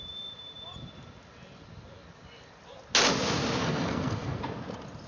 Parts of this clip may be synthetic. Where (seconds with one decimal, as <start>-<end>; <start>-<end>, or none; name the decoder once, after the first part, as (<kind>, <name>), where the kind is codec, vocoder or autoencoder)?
3.6-4.4 (codec, SNAC)